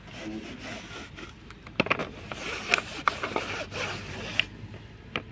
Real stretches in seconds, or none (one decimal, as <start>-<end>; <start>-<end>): 0.0-5.3